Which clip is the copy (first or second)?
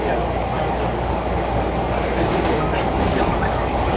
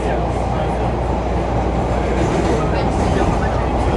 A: first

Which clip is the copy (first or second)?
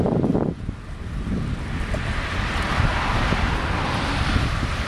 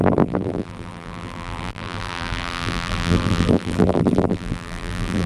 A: second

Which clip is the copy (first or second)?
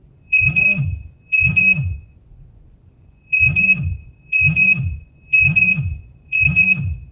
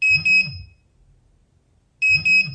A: first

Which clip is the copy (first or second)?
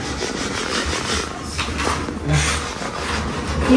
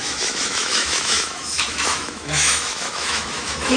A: second